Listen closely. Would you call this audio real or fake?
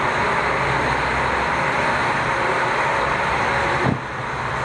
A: fake